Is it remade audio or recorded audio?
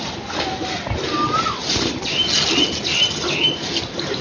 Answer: recorded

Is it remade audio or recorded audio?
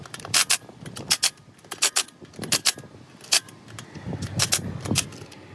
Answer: recorded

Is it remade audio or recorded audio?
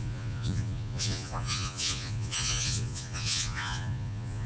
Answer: remade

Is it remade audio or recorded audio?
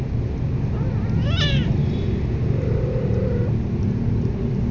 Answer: recorded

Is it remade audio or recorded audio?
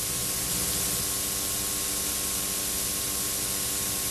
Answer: recorded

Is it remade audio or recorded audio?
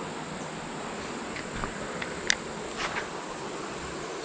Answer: recorded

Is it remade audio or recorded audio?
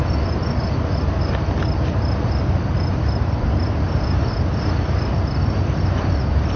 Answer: recorded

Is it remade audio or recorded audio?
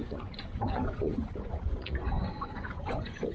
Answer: remade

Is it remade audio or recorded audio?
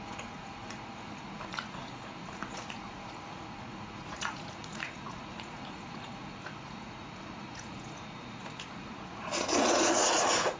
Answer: remade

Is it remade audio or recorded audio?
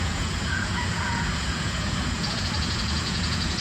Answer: remade